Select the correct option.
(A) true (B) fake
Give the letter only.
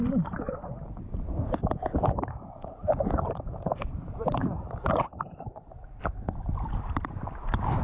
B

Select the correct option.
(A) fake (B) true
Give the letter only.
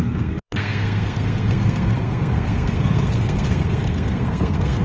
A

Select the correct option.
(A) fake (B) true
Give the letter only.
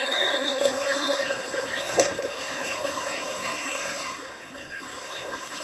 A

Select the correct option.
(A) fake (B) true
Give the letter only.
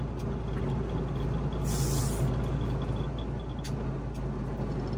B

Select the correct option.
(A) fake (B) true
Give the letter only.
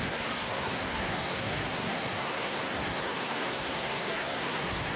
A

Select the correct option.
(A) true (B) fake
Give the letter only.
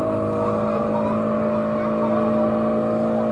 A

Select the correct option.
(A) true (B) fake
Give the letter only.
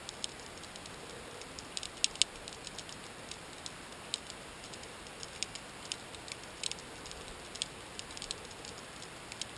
A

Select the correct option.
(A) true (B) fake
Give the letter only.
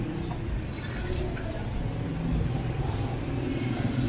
A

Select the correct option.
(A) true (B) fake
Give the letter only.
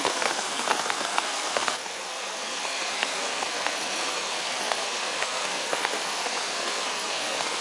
B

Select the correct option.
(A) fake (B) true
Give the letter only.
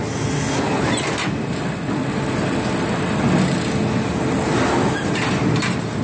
B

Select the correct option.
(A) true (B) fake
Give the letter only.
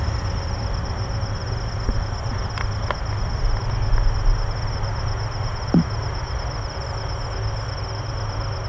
A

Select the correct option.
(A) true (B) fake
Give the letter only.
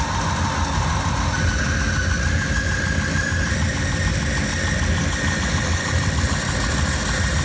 A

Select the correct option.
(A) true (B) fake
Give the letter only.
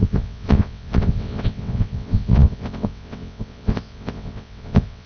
B